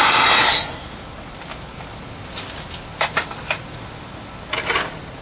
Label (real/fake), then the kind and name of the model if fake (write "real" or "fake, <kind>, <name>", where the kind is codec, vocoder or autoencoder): real